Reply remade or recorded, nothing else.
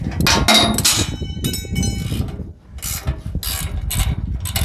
recorded